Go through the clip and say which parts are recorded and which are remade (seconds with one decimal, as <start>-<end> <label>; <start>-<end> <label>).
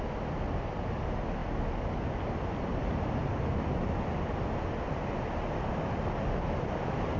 0.0-7.2 recorded